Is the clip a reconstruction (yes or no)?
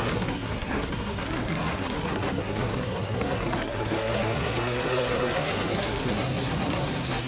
yes